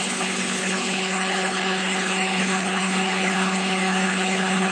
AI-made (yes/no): yes